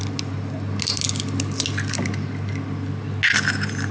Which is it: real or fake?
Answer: real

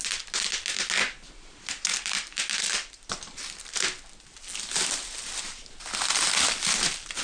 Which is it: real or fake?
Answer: real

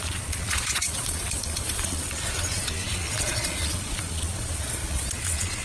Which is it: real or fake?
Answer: fake